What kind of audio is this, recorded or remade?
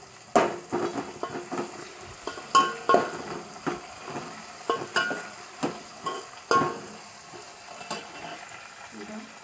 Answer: recorded